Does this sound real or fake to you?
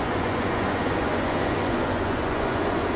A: fake